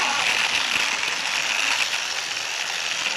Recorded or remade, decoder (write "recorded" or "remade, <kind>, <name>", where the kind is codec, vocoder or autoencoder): recorded